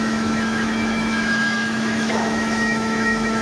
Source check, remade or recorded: remade